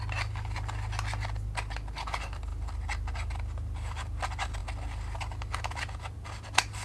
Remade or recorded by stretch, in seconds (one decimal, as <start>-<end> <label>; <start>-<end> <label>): 0.0-6.8 recorded